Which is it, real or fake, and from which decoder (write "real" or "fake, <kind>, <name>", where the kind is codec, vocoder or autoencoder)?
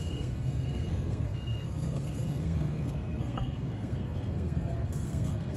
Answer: fake, codec, SNAC